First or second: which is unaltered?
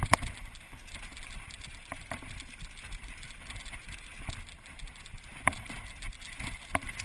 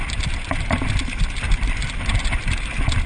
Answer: first